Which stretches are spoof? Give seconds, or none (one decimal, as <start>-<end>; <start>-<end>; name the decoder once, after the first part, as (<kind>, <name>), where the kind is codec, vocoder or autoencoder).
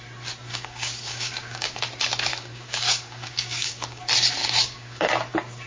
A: 0.5-1.8 (codec, DAC); 2.3-4.0; 4.4-5.1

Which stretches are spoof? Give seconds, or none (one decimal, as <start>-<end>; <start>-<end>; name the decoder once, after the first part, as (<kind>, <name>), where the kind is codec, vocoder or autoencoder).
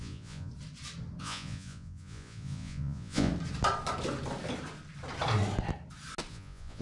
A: 0.0-0.5 (vocoder, Vocos); 1.2-3.3; 6.3-6.8